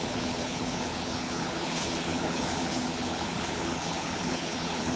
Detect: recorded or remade remade